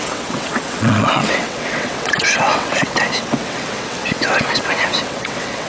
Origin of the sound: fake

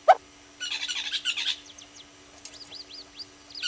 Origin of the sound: real